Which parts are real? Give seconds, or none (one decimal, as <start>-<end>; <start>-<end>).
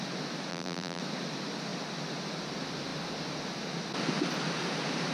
0.0-0.5; 1.0-5.1